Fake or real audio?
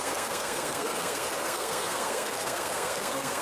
fake